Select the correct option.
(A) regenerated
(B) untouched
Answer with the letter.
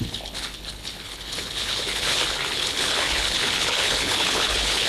A